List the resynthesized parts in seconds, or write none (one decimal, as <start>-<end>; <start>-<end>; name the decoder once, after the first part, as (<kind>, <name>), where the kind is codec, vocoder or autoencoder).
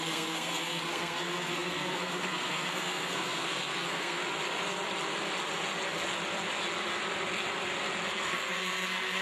0.0-4.2 (codec, SNAC); 8.3-9.2